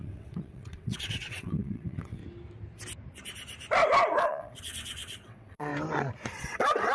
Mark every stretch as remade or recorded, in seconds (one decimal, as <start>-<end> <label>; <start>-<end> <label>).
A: 0.0-2.2 remade; 2.2-4.2 recorded; 4.2-5.7 remade; 5.7-6.4 recorded; 6.4-6.9 remade